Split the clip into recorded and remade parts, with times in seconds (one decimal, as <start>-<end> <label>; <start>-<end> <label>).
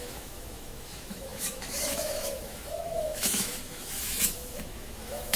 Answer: 0.0-5.4 remade